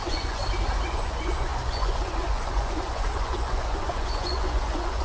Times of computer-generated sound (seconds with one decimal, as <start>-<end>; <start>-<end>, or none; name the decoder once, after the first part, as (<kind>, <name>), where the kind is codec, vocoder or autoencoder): 0.0-0.4 (vocoder, Vocos); 0.9-5.0